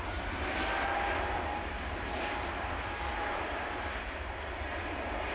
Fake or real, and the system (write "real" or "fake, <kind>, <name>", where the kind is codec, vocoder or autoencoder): real